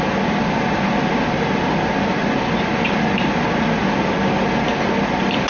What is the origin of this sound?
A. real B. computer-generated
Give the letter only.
A